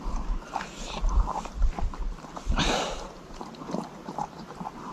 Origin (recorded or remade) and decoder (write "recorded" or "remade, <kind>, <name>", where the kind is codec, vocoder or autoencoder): recorded